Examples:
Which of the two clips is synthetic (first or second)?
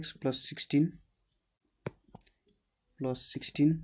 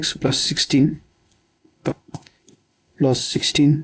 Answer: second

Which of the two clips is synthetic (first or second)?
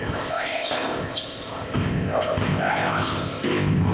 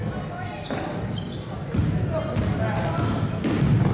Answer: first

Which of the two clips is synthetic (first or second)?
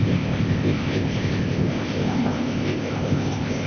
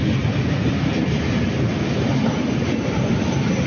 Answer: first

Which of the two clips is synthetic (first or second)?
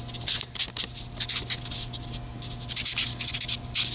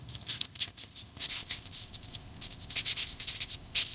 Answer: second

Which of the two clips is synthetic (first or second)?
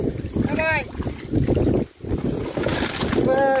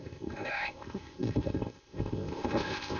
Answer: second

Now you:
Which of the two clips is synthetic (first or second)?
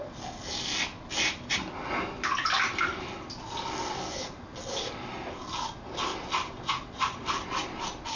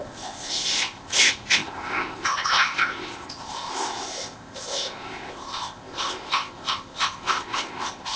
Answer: second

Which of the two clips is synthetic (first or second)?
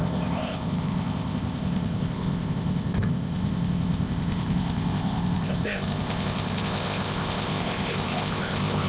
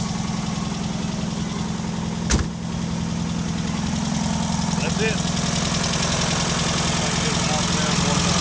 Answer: first